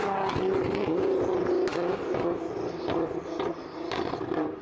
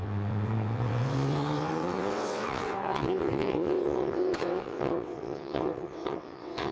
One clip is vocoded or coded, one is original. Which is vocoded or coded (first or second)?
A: second